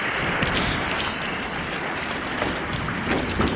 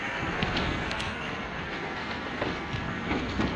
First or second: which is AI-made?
second